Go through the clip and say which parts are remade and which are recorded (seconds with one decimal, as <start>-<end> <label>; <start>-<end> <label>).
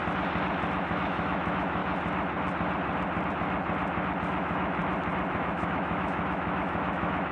0.0-0.8 recorded; 0.8-1.8 remade; 1.8-4.2 recorded; 4.2-4.8 remade; 4.8-5.3 recorded; 5.3-7.3 remade